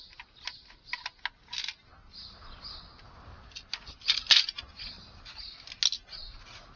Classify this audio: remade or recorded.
recorded